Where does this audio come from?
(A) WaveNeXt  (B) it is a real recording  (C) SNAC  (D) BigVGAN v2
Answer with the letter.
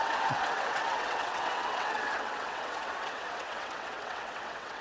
A